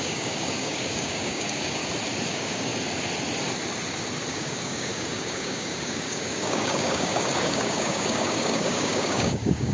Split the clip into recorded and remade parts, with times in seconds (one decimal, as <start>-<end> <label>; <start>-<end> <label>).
0.0-1.8 remade; 1.8-2.3 recorded; 2.3-2.7 remade; 2.7-4.3 recorded; 4.3-9.7 remade